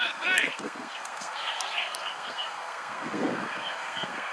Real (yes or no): no